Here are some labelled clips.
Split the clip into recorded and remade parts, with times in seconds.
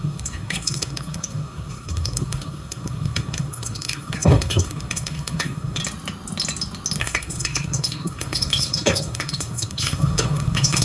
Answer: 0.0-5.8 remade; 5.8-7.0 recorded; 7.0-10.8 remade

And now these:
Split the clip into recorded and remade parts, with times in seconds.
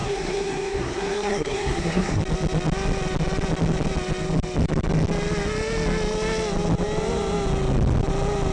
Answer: 0.0-2.2 remade; 2.2-8.5 recorded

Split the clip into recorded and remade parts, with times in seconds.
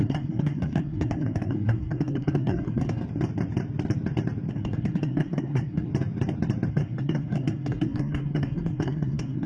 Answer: 0.0-3.0 remade; 3.0-4.5 recorded; 4.5-5.9 remade; 5.9-6.7 recorded; 6.7-9.5 remade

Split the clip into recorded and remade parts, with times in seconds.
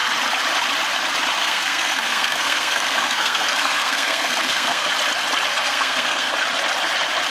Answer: 0.0-1.4 recorded; 1.4-4.9 remade; 4.9-5.5 recorded; 5.5-6.3 remade; 6.3-7.3 recorded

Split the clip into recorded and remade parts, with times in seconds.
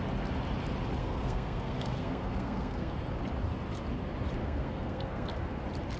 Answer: 0.0-1.0 recorded; 1.0-2.9 remade; 2.9-4.4 recorded; 4.4-5.6 remade; 5.6-6.0 recorded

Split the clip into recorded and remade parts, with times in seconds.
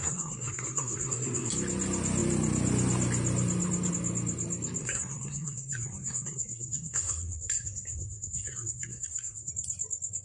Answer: 0.0-1.5 remade; 1.5-4.8 recorded; 4.8-9.5 remade; 9.5-10.2 recorded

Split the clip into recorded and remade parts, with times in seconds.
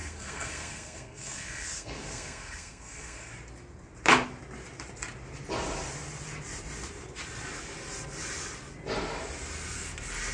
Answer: 0.0-3.3 remade; 3.3-10.3 recorded